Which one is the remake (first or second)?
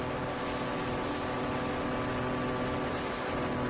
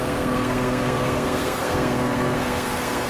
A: second